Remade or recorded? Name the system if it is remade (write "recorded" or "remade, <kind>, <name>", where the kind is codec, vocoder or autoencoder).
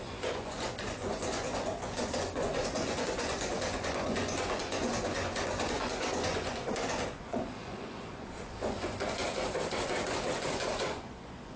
remade, vocoder, Vocos